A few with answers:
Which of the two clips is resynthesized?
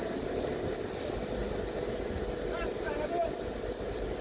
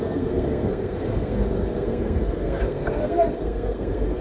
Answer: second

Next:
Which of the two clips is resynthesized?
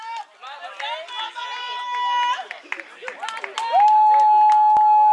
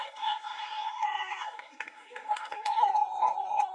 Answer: second